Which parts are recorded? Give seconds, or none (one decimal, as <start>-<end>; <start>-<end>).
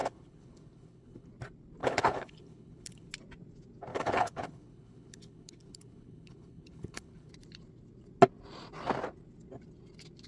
1.3-1.8; 3.1-3.9; 7.3-10.3